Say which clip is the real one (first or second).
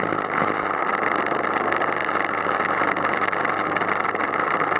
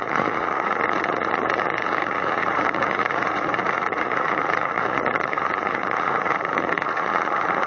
first